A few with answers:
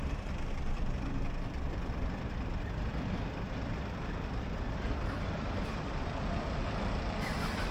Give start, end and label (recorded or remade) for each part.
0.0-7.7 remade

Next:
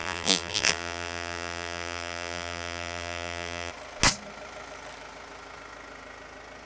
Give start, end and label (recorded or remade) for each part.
0.0-3.7 remade; 3.7-6.7 recorded

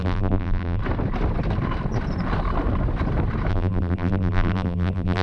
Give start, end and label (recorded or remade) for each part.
0.0-0.8 remade; 0.8-3.5 recorded; 3.5-5.2 remade

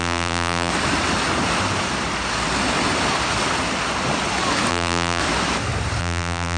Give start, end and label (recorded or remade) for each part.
0.0-0.7 remade; 0.7-4.7 recorded; 4.7-5.2 remade; 5.2-6.0 recorded; 6.0-6.6 remade